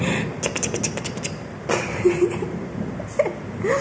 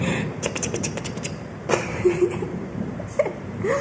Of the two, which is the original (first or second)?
first